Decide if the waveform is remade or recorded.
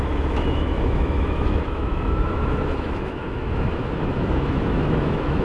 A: remade